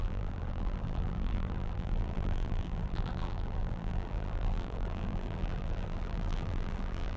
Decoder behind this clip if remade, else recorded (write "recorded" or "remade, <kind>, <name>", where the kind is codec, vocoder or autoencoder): remade, vocoder, BigVGAN v2